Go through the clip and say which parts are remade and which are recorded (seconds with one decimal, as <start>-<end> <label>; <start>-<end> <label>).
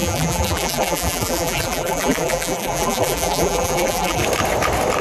0.0-4.2 remade; 4.2-5.0 recorded